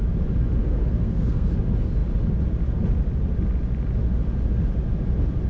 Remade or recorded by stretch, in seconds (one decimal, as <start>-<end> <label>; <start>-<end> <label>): 0.0-0.6 recorded; 0.6-1.5 remade; 1.5-5.5 recorded